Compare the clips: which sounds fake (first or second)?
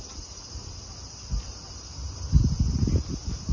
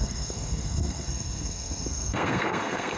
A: second